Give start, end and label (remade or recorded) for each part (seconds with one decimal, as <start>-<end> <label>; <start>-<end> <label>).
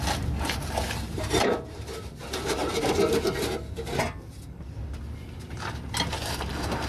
0.0-2.6 remade; 2.6-6.5 recorded; 6.5-6.9 remade